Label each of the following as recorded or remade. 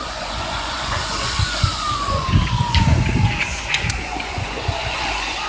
remade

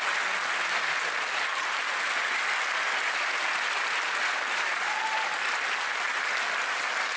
recorded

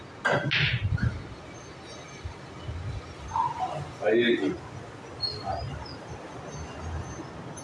recorded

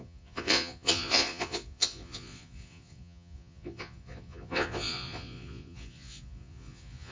remade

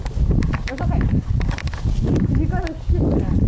recorded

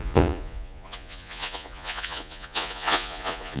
remade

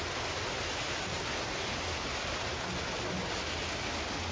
recorded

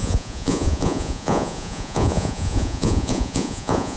remade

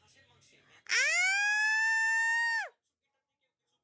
recorded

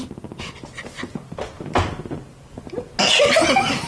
recorded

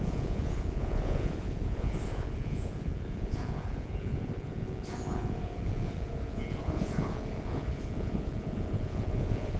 remade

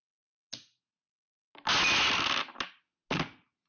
recorded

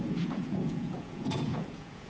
remade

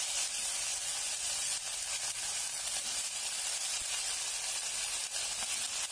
recorded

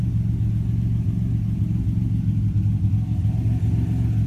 recorded